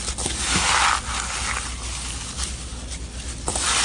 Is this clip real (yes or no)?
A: yes